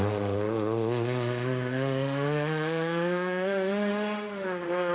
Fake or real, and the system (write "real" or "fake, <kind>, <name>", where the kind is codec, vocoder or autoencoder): fake, autoencoder, DAC-VAE